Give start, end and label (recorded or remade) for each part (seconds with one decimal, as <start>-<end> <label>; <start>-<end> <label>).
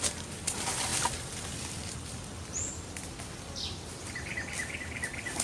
0.0-5.4 recorded